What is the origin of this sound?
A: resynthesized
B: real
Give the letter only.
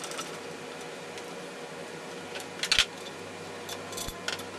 B